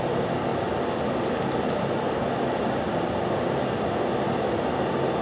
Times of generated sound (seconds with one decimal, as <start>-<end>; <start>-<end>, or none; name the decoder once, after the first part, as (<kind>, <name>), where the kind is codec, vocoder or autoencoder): none